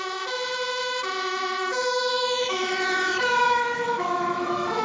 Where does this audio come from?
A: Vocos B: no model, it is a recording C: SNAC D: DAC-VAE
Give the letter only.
D